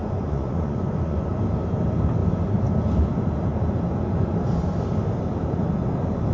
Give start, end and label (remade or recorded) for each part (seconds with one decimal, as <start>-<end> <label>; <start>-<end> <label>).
0.0-1.3 remade; 1.3-6.3 recorded